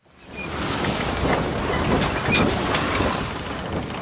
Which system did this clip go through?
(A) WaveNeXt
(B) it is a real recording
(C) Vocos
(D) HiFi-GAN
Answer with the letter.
B